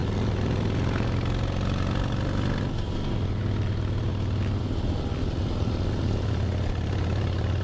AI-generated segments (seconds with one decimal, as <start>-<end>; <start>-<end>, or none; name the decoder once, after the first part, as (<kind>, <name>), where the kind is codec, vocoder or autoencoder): none

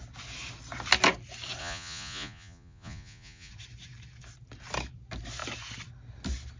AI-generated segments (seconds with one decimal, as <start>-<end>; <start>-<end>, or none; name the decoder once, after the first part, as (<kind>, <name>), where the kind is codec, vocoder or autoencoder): 1.6-3.5 (vocoder, Vocos)

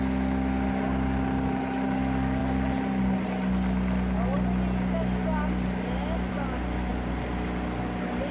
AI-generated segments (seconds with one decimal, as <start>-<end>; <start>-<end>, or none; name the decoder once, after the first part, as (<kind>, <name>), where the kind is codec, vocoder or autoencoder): none

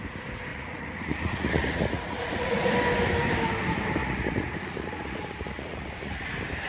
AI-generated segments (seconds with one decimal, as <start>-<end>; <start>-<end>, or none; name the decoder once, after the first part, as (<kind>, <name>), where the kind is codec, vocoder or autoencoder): 0.5-2.7 (vocoder, Vocos); 4.0-6.3

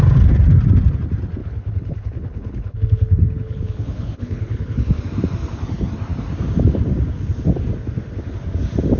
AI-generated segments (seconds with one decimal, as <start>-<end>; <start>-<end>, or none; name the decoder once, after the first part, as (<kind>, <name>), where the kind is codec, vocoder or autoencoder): 1.4-5.0 (codec, HILCodec)